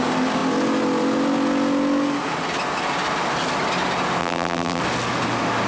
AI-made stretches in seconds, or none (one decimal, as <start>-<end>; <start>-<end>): 4.2-4.8